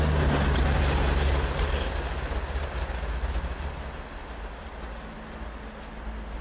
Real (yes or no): yes